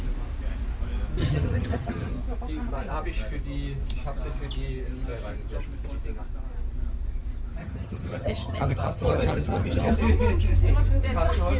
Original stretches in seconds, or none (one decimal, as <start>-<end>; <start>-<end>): 0.0-1.2; 2.1-7.6; 9.9-11.6